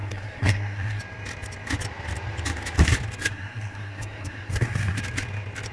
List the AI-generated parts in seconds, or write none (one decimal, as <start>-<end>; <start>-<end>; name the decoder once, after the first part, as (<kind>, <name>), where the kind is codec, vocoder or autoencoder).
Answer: 0.0-1.0 (codec, SNAC); 3.2-5.0